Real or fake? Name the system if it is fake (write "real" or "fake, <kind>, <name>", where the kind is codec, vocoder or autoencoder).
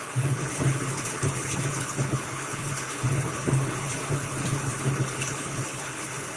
fake, codec, HILCodec